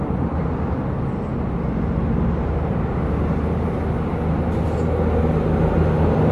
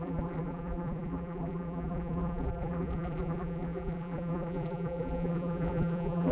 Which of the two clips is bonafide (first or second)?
first